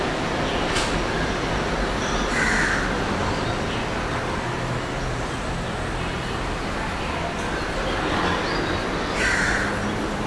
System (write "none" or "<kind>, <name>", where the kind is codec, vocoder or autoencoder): none